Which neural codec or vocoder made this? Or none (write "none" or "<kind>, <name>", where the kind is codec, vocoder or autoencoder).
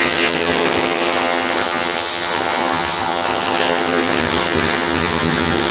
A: vocoder, HiFi-GAN